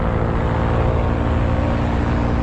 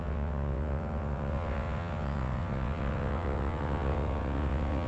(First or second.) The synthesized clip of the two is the second